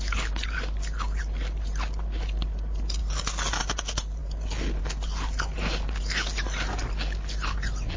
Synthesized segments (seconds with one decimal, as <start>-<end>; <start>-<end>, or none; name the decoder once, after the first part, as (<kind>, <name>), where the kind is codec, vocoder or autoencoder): none